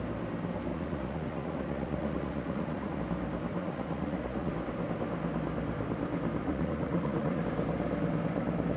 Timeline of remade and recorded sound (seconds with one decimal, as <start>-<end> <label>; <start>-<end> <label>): 0.0-0.7 recorded; 0.7-3.0 remade; 3.0-3.6 recorded; 3.6-4.5 remade; 4.5-6.4 recorded; 6.4-7.4 remade; 7.4-8.8 recorded